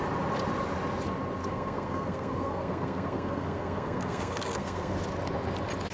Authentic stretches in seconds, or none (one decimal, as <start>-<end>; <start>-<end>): 0.0-1.4; 4.9-5.9